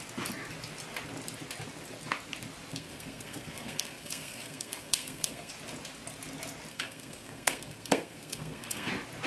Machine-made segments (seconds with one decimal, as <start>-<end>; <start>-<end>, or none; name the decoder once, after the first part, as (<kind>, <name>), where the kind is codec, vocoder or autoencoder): 2.7-5.5 (codec, SNAC); 6.7-8.9